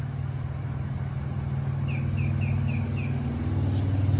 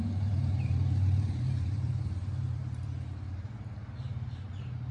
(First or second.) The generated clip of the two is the second